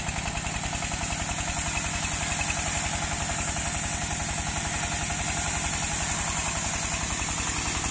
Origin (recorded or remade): recorded